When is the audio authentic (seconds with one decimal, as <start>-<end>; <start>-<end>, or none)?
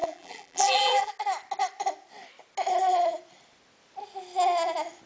1.1-5.1